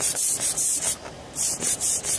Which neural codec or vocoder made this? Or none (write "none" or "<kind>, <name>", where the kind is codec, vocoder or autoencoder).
vocoder, BigVGAN v2